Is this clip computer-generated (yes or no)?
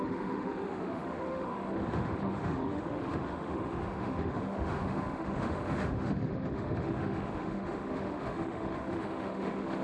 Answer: yes